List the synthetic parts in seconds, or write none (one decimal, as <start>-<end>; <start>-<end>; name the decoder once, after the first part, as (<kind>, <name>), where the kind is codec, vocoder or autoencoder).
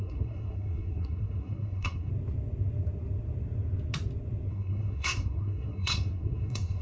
0.0-2.1 (codec, SNAC); 4.5-6.8